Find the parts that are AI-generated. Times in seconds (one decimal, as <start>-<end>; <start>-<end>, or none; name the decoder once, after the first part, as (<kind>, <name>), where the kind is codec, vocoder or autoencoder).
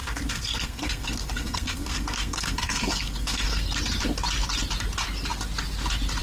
0.0-3.7 (codec, SNAC)